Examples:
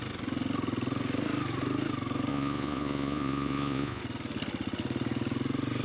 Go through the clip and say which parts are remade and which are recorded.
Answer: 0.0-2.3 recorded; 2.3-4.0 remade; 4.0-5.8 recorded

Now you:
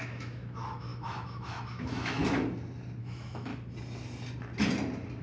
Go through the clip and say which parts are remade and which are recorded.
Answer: 0.0-2.2 remade; 2.2-3.0 recorded; 3.0-3.5 remade; 3.5-5.2 recorded